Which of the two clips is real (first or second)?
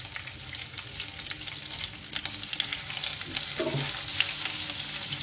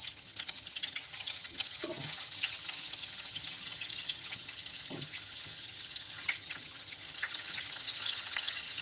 first